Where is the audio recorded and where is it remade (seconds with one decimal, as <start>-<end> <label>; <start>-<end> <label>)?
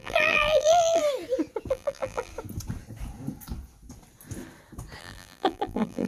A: 0.0-1.0 remade; 1.0-1.7 recorded; 1.7-2.3 remade; 2.3-5.0 recorded; 5.0-6.1 remade